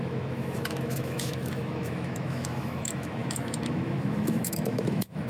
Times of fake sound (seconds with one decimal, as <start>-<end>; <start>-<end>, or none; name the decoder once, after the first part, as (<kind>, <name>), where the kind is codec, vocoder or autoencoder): 0.0-5.3 (autoencoder, DAC-VAE)